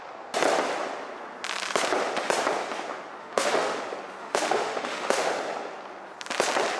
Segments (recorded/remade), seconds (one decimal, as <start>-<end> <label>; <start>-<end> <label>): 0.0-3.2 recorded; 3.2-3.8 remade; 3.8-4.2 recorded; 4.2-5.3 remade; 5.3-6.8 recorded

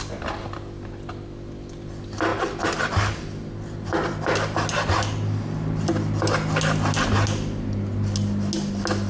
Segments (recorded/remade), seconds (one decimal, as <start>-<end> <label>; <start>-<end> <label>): 0.0-9.1 recorded

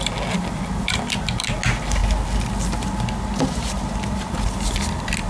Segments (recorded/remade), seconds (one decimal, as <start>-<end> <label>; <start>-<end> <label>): 0.0-5.3 recorded